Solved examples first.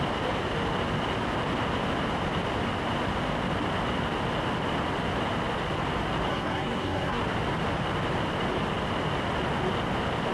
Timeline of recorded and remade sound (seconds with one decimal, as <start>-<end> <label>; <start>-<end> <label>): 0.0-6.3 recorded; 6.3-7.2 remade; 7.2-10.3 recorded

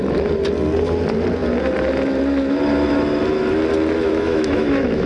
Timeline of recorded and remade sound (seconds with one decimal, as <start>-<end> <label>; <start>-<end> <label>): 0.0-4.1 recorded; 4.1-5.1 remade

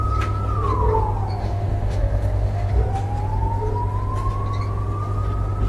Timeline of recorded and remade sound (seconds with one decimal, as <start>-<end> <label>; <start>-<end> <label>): 0.0-1.4 recorded; 1.4-2.7 remade; 2.7-5.7 recorded